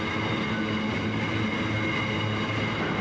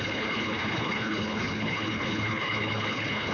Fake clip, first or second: second